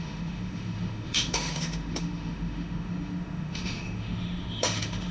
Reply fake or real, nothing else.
fake